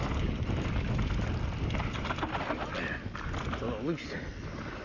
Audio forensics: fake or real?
real